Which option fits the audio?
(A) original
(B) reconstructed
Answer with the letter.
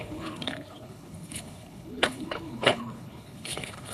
B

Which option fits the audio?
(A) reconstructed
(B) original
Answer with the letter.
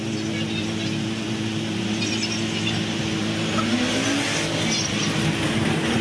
B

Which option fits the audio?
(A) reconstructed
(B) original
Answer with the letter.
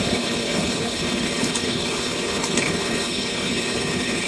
A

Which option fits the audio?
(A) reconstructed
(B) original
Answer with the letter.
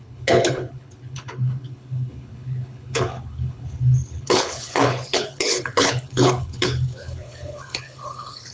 A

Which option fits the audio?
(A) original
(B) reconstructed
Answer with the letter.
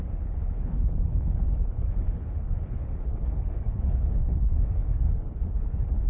B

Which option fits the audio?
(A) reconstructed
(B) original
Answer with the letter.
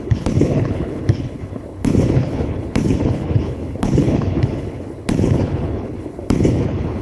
A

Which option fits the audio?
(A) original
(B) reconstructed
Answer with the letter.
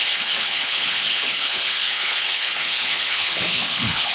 B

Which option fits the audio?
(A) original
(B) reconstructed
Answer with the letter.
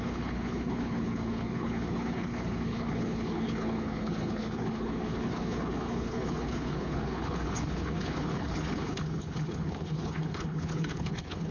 B